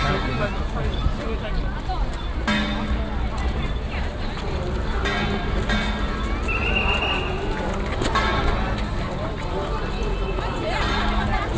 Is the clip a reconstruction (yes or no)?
no